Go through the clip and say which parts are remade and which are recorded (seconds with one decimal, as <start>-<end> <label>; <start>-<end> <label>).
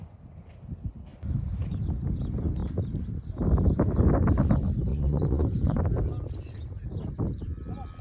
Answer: 0.0-4.9 recorded; 4.9-5.8 remade; 5.8-8.0 recorded